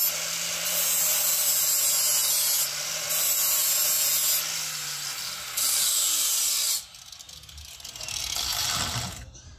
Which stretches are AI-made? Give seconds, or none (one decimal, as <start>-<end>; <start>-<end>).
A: none